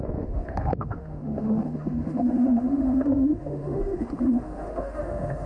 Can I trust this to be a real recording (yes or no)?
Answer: no